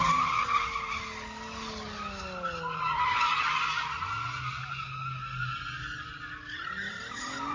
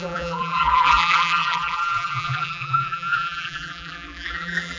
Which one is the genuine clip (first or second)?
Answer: first